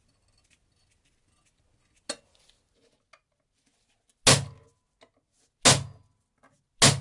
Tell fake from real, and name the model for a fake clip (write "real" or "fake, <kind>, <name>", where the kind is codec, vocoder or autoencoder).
real